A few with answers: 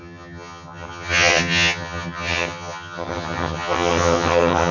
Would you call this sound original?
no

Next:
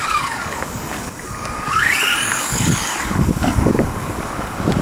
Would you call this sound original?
no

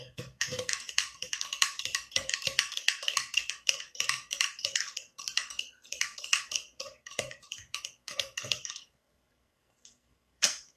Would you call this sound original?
no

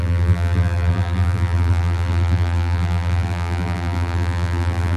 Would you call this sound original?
no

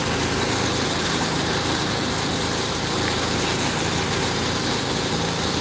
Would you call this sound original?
yes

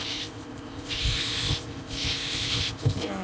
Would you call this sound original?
no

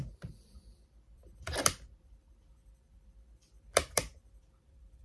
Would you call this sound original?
no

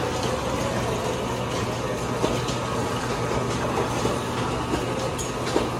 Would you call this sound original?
yes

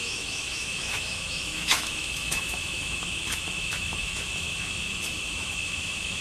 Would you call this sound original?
no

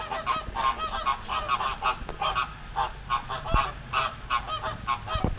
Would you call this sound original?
yes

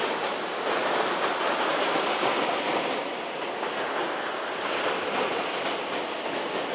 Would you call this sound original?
yes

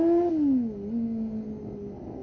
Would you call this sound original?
yes